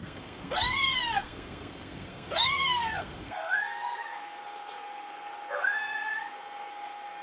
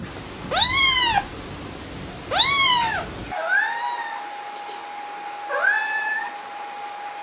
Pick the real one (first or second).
second